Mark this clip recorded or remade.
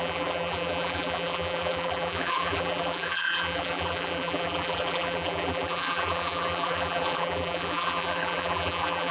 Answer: remade